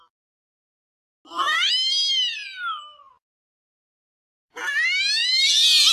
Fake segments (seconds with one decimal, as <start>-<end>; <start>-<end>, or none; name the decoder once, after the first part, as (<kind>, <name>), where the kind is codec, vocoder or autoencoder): none